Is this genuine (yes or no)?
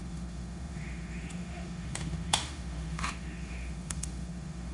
no